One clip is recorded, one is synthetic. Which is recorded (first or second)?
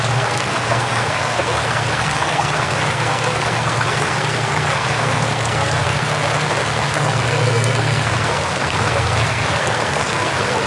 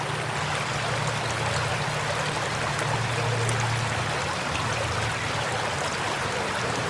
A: second